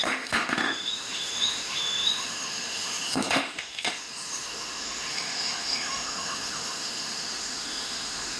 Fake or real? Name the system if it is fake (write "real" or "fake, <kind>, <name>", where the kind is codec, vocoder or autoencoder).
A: fake, autoencoder, DAC-VAE